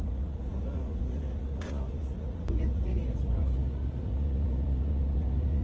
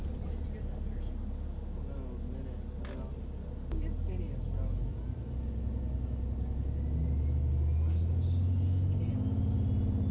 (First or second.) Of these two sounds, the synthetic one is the first